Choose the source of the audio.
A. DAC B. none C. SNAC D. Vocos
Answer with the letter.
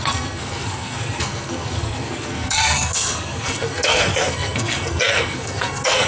C